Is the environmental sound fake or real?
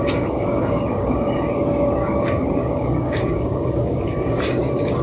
fake